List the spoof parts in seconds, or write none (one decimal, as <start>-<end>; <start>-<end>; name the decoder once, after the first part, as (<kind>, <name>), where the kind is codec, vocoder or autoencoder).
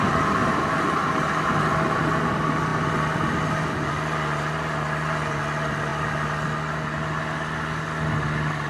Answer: none